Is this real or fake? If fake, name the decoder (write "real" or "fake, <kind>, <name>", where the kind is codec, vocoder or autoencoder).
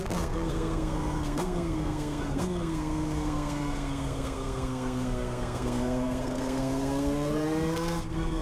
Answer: fake, codec, SNAC